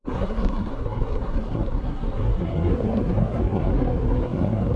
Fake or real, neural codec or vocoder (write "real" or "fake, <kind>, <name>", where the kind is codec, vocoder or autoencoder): fake, codec, SNAC